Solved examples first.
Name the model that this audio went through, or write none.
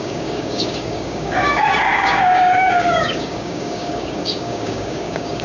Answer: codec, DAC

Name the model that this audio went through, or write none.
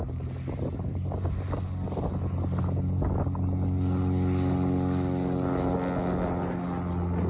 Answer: none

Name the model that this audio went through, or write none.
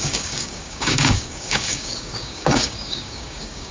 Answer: codec, DAC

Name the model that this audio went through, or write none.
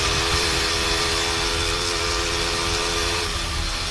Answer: none